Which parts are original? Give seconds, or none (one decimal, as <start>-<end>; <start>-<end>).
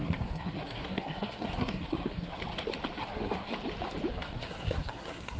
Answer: 2.4-3.0; 3.5-4.1